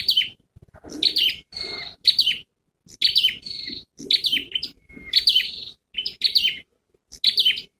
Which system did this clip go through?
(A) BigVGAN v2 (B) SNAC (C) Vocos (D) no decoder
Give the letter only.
D